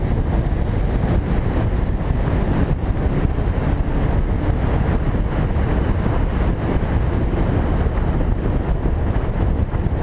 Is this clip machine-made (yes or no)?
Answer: no